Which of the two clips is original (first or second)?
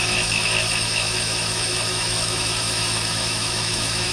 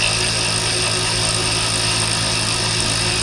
second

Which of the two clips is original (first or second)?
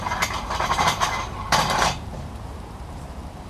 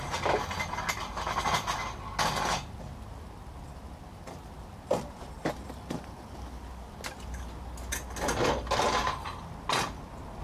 second